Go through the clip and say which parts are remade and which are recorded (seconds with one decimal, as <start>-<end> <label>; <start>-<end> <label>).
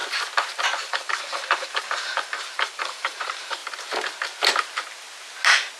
0.0-0.9 recorded; 0.9-3.6 remade; 3.6-5.8 recorded